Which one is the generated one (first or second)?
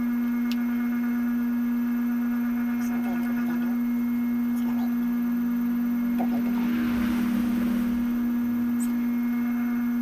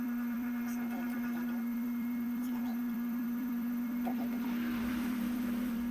second